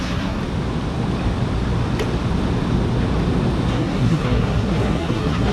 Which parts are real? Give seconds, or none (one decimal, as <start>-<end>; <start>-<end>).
0.4-3.7